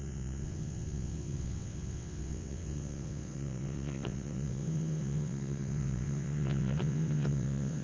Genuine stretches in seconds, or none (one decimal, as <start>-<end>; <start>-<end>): none